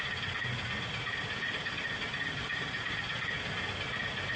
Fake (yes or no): no